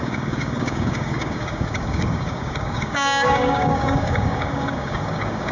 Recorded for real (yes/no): no